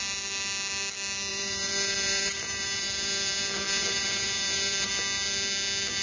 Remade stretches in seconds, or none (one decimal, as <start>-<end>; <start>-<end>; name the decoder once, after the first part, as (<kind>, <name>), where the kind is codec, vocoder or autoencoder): 1.3-4.9 (vocoder, BigVGAN v2)

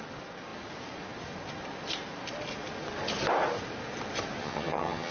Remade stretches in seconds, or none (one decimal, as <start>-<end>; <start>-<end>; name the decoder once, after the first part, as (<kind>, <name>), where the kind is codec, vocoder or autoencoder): 4.4-5.1 (vocoder, HiFi-GAN)

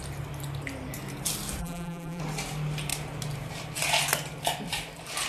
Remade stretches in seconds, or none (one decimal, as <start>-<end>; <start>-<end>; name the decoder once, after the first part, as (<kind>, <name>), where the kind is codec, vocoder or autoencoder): 1.6-2.2 (vocoder, BigVGAN v2)

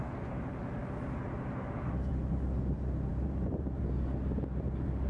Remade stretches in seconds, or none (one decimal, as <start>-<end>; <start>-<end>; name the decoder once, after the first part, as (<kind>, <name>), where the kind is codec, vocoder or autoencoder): 3.1-3.8 (vocoder, BigVGAN v2)

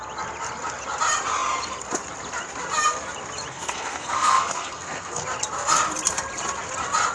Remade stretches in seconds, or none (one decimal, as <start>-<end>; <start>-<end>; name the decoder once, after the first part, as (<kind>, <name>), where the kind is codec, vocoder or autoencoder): 3.5-5.2 (codec, SNAC)

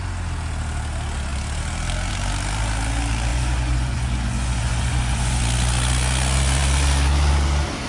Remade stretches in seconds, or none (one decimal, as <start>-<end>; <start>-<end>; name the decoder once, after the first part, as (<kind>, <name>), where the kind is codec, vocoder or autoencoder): 3.3-5.4 (vocoder, Vocos)

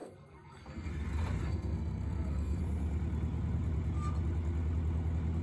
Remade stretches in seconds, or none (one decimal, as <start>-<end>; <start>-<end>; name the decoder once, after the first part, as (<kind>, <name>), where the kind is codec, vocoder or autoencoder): 0.0-0.9 (codec, SNAC); 1.4-2.6